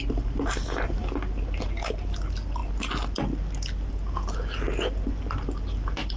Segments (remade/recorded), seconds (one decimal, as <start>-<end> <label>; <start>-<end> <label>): 0.0-6.2 recorded